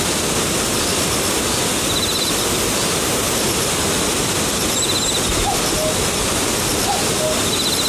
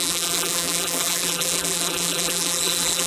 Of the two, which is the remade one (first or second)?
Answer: second